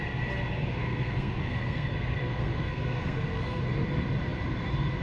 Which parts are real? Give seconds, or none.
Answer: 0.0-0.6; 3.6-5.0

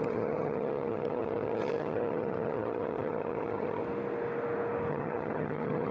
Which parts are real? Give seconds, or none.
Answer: 3.8-4.9

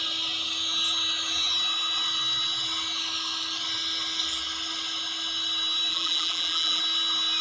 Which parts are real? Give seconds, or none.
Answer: 0.0-5.9; 6.8-7.4

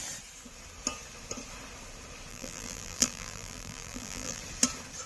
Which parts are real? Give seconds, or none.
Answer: 0.0-2.3; 4.4-5.1